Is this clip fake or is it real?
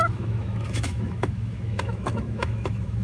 fake